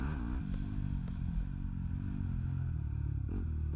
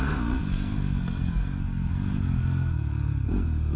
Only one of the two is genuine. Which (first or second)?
first